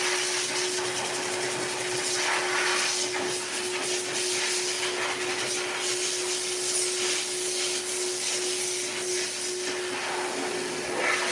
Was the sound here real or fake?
real